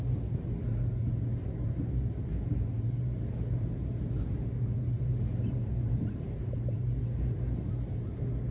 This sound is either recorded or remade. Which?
remade